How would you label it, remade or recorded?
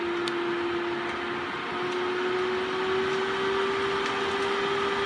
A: recorded